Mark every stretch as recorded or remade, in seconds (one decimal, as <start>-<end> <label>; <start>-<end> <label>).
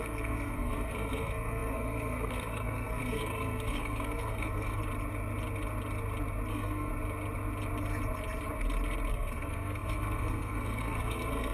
0.0-4.8 remade; 4.8-6.5 recorded; 6.5-6.9 remade; 6.9-9.1 recorded; 9.1-11.5 remade